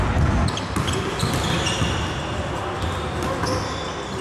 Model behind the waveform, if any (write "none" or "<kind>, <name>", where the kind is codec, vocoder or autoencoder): none